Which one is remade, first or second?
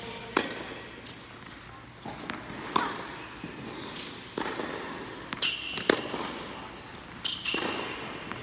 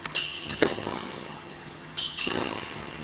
second